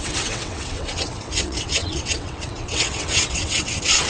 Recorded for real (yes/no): no